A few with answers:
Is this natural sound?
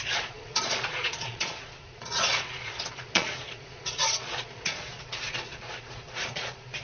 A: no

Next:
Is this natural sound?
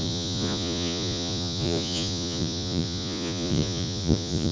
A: no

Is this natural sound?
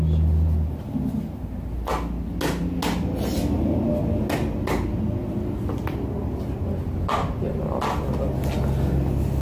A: yes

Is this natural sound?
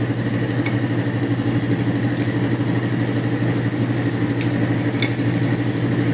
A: yes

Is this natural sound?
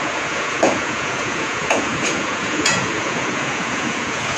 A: no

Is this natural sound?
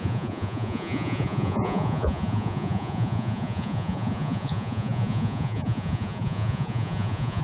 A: no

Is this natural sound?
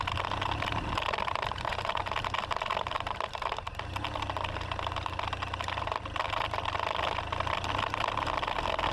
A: yes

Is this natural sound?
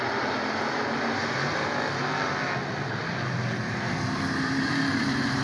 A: yes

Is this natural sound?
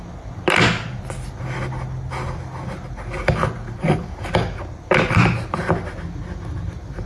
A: yes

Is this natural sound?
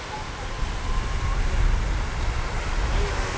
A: yes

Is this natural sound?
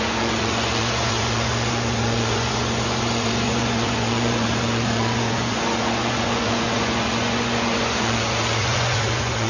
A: no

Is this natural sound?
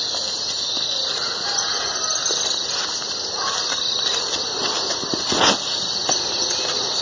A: yes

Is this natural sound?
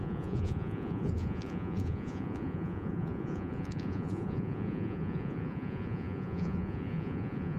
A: no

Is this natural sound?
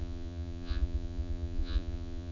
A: no